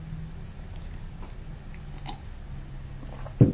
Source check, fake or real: real